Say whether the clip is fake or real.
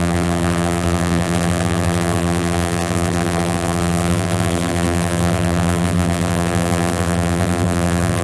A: fake